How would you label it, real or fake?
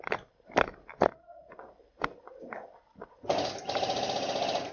real